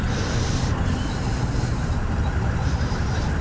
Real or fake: real